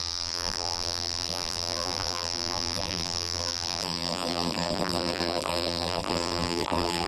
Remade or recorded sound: remade